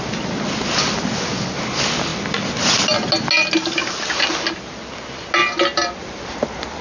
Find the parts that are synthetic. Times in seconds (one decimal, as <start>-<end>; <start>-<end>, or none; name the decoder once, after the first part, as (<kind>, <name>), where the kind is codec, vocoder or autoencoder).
none